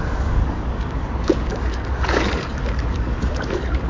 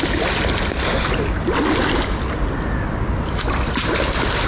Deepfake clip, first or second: first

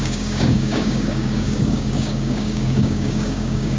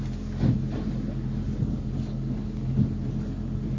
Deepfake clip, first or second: first